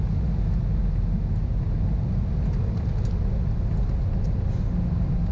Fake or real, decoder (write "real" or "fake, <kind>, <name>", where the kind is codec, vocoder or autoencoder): real